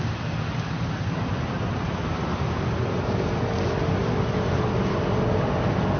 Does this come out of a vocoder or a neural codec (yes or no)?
no